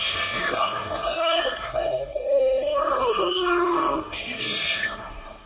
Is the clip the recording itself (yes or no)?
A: no